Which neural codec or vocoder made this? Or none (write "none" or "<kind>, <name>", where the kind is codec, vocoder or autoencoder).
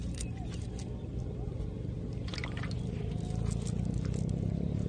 none